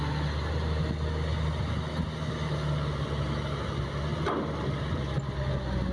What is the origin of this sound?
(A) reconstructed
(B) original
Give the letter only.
B